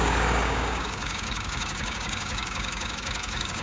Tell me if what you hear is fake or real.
fake